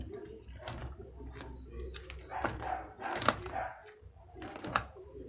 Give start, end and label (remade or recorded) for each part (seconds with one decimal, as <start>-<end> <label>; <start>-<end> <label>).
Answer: 0.0-0.8 remade; 0.8-3.0 recorded; 3.0-3.8 remade; 3.8-4.6 recorded; 4.6-5.3 remade